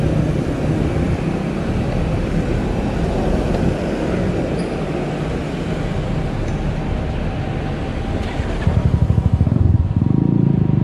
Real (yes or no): yes